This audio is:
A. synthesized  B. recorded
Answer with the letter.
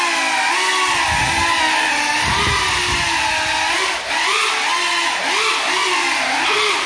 B